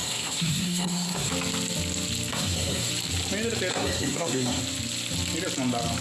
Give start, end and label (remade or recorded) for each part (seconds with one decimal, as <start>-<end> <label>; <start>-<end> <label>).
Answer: 0.0-1.3 remade; 1.3-2.3 recorded; 2.3-2.9 remade; 2.9-3.7 recorded; 3.7-4.6 remade; 4.6-6.0 recorded